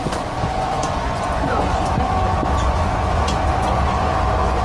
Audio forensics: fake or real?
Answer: fake